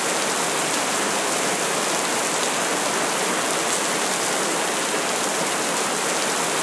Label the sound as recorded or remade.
recorded